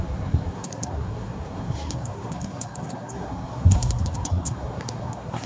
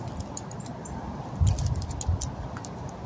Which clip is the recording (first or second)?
second